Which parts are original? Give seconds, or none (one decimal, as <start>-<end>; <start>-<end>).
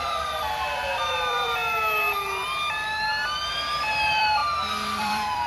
1.6-3.9; 4.4-5.0